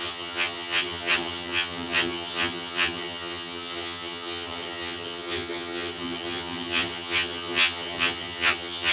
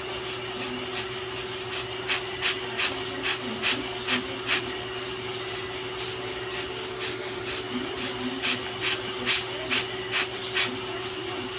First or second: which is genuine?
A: second